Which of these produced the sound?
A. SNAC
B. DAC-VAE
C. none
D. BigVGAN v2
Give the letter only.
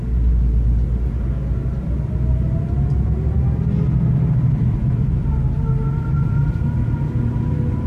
C